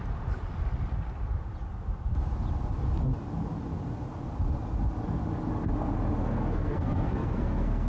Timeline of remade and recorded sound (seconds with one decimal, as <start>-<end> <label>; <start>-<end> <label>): 0.0-6.2 recorded; 6.2-7.9 remade